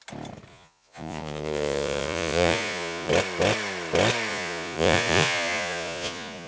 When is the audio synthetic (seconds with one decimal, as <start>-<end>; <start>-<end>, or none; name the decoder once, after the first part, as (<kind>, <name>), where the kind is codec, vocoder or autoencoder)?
0.5-3.1 (vocoder, Vocos); 4.3-6.5